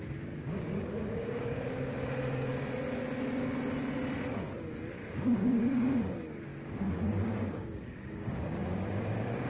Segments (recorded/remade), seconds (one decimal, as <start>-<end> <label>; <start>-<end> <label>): 0.0-2.5 remade; 2.5-5.2 recorded; 5.2-9.5 remade